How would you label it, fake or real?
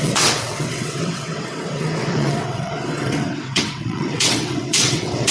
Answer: fake